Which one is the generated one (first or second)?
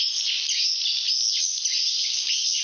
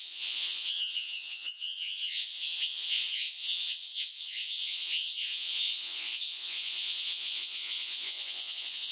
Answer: second